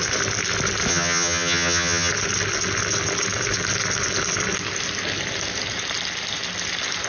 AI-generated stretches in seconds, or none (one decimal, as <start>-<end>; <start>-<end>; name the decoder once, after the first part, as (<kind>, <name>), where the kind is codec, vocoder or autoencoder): 0.9-2.1 (vocoder, HiFi-GAN)